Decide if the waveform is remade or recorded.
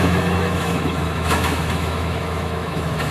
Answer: remade